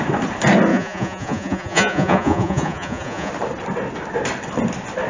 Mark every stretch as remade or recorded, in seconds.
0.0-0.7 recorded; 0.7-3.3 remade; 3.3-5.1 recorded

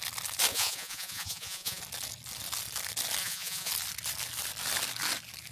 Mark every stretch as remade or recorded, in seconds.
0.0-0.5 recorded; 0.5-1.8 remade; 1.8-3.2 recorded; 3.2-3.7 remade; 3.7-5.5 recorded

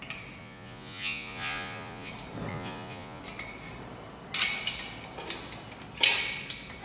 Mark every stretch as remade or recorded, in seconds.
0.0-0.4 recorded; 0.4-2.1 remade; 2.1-2.5 recorded; 2.5-3.2 remade; 3.2-6.8 recorded

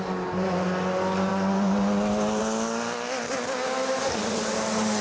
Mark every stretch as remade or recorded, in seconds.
0.0-5.0 recorded

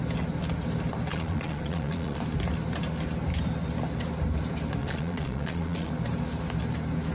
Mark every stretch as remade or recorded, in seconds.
0.0-1.1 recorded; 1.1-2.2 remade; 2.2-4.8 recorded; 4.8-5.9 remade; 5.9-7.1 recorded